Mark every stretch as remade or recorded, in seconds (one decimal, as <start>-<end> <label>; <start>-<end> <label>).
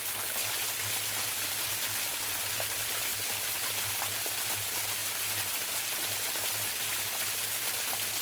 0.0-8.2 recorded